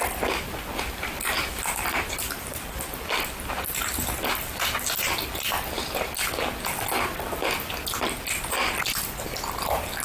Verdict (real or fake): real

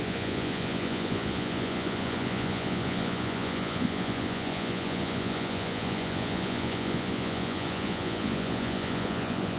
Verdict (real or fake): fake